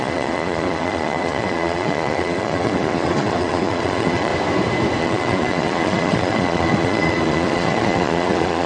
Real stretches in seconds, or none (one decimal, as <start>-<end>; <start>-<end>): 4.3-5.0